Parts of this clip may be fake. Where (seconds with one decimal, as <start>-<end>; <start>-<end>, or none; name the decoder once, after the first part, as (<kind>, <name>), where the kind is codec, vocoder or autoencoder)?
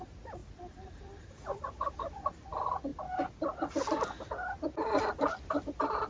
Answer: 0.0-0.4 (vocoder, BigVGAN v2); 1.0-2.9; 4.6-6.1